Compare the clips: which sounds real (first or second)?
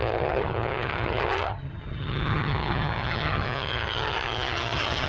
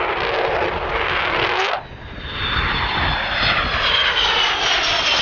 second